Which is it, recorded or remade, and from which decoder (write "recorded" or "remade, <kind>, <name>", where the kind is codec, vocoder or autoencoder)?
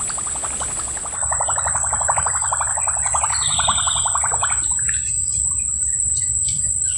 recorded